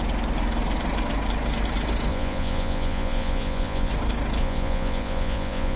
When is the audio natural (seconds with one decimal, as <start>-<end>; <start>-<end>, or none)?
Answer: 0.0-2.1; 3.9-4.4